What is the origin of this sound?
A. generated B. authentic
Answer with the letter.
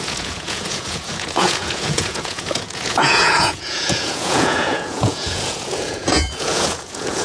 A